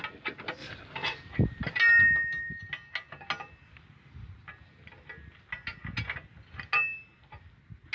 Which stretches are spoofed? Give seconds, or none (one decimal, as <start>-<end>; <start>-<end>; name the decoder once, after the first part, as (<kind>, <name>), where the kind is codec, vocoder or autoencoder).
0.6-1.8 (vocoder, BigVGAN v2)